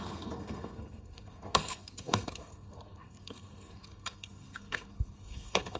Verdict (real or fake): fake